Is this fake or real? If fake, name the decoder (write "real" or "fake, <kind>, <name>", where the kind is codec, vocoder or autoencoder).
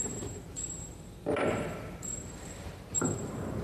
fake, vocoder, BigVGAN v2